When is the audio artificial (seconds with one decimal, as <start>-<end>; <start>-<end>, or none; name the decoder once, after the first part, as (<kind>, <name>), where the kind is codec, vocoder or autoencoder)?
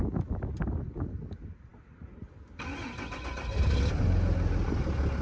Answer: none